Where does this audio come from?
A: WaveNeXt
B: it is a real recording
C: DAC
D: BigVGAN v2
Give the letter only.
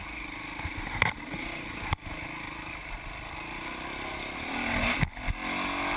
B